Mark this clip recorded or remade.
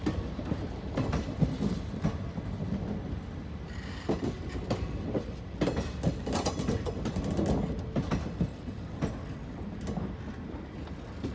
recorded